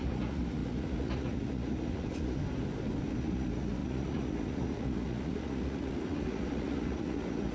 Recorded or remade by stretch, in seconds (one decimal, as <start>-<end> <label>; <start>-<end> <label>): 0.0-2.4 remade; 2.4-3.2 recorded; 3.2-7.5 remade